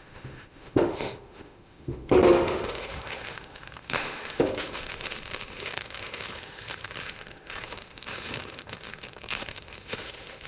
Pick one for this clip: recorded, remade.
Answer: remade